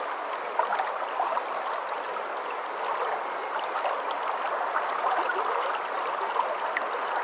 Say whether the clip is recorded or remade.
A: recorded